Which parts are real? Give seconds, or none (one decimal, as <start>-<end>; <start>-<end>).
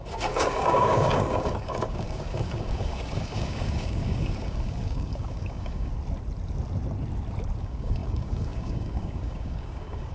5.9-7.6